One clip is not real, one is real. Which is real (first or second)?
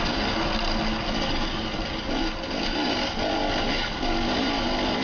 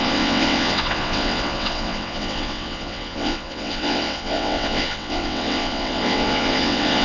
first